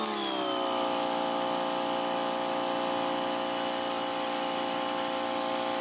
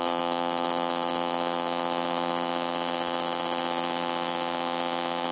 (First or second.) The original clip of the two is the first